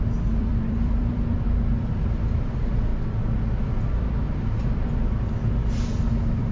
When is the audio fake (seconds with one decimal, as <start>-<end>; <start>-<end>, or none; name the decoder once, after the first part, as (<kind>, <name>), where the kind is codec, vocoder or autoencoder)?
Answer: 0.0-2.9 (vocoder, BigVGAN v2); 6.0-6.5